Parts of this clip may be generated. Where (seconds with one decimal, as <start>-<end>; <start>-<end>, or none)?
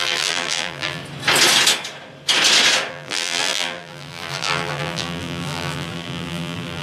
0.0-1.0; 2.9-6.8